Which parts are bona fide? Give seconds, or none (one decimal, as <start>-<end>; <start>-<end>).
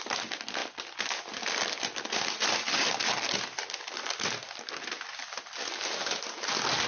0.0-6.9